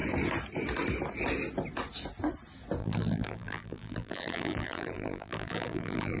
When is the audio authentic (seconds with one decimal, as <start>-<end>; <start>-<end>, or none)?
0.0-2.8

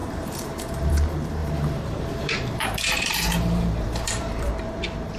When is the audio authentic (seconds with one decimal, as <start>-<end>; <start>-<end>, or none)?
0.9-1.4; 4.5-5.2

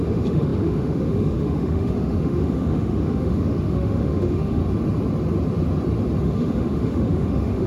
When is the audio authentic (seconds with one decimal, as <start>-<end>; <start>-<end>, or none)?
4.6-6.2

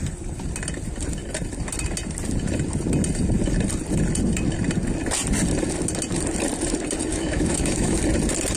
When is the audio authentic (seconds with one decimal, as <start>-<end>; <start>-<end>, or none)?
0.0-7.1; 8.0-8.6

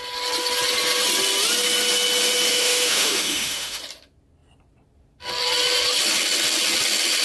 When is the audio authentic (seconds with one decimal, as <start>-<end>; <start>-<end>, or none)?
0.0-2.5; 3.8-7.2

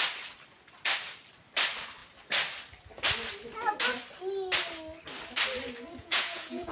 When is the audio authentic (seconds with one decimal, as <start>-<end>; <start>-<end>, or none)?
0.0-6.0